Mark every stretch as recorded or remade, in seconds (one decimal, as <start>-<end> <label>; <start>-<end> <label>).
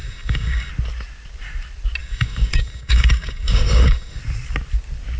0.0-0.7 remade; 0.7-2.0 recorded; 2.0-4.2 remade; 4.2-5.2 recorded